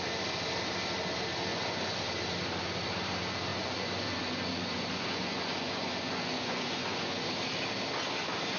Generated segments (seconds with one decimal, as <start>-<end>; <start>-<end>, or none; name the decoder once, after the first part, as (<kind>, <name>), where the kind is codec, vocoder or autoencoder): 1.5-2.0 (vocoder, Vocos); 3.5-7.3